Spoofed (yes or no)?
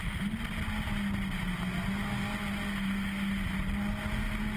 no